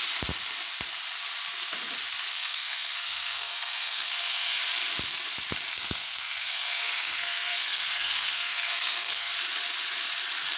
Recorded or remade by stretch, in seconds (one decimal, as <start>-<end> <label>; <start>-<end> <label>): 0.0-2.3 recorded; 2.3-4.6 remade; 4.6-5.7 recorded; 5.7-9.3 remade; 9.3-10.6 recorded